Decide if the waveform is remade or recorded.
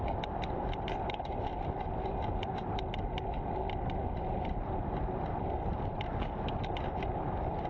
recorded